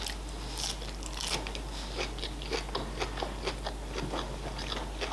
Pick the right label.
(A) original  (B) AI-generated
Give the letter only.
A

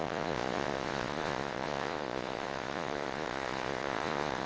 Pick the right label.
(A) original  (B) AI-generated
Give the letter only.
B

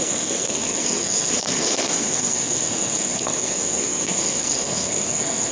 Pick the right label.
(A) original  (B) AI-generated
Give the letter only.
B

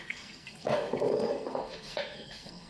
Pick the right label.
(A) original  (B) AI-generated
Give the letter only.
B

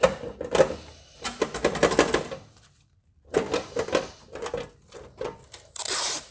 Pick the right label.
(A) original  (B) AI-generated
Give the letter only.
A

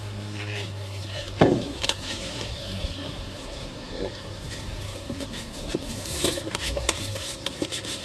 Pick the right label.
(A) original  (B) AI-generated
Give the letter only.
B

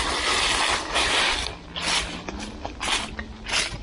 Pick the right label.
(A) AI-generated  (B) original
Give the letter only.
B